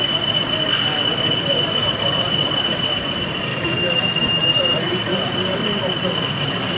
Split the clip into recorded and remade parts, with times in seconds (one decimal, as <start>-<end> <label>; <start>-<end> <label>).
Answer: 0.0-3.5 recorded; 3.5-4.6 remade; 4.6-6.8 recorded